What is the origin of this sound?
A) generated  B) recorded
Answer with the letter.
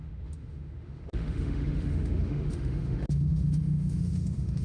A